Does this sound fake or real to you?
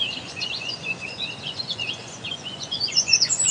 fake